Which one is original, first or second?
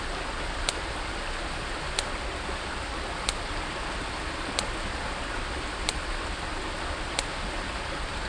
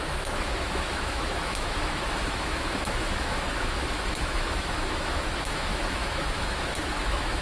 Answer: first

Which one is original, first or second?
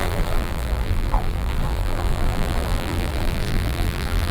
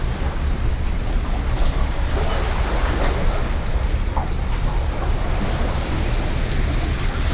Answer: second